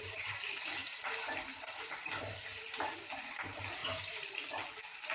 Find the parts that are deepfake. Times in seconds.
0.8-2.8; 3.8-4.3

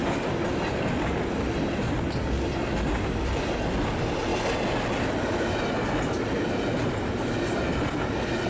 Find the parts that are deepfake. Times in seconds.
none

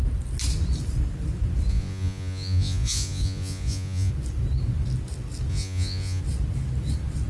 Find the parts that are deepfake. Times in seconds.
1.7-4.1; 5.5-6.2

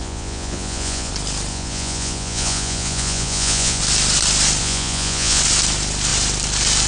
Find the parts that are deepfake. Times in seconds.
0.0-1.1; 1.5-3.8; 4.6-5.4

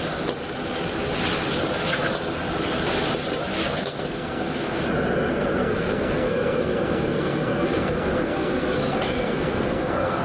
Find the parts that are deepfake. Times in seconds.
3.6-4.8; 5.3-10.2

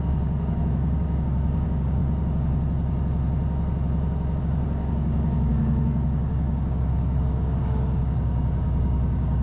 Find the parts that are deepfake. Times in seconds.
0.0-2.0; 4.4-9.4

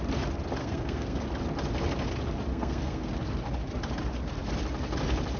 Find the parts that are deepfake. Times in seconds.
0.6-1.2; 2.5-3.1